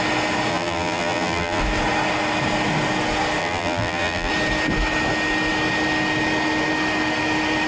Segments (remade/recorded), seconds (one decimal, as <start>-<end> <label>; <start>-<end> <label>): 0.0-0.5 recorded; 0.5-1.6 remade; 1.6-3.4 recorded; 3.4-4.3 remade; 4.3-7.7 recorded